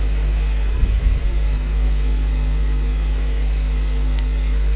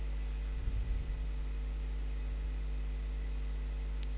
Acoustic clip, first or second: second